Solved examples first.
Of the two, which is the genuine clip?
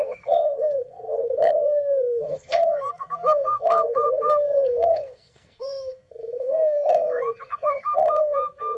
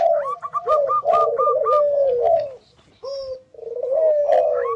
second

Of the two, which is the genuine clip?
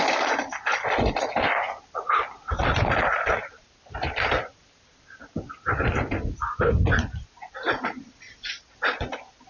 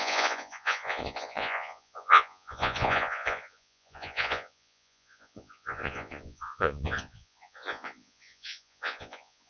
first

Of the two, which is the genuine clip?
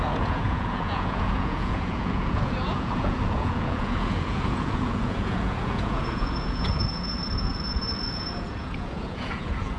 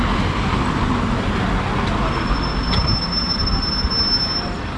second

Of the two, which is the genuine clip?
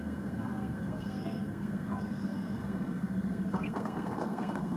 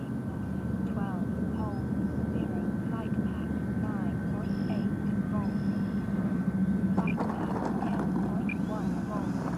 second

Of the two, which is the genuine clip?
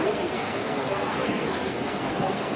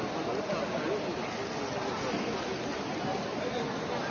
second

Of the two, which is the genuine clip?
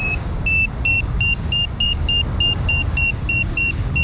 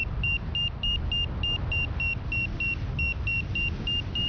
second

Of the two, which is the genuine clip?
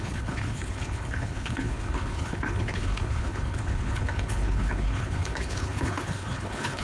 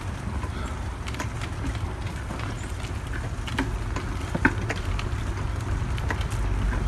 second